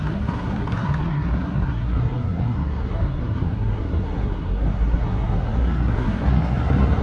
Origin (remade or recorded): remade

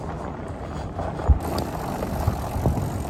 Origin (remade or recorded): recorded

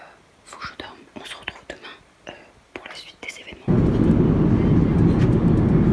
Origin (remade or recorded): recorded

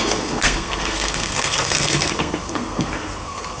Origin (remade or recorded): remade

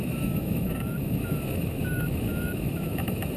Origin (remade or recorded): remade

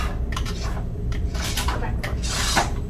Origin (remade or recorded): remade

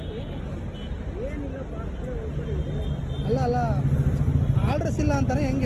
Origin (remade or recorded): recorded